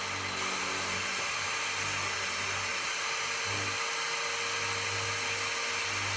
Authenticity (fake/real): real